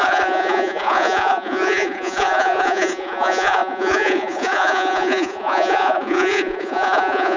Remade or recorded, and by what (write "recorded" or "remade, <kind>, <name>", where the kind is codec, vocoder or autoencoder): remade, vocoder, Vocos